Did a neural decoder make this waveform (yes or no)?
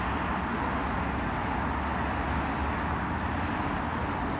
no